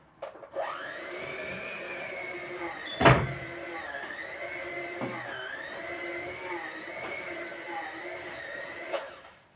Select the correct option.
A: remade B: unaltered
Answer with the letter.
A